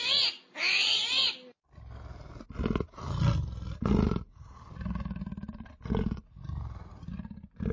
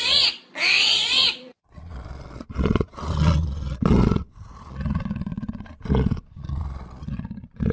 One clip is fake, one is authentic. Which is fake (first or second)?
second